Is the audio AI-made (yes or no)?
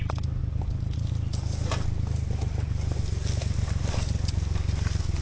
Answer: no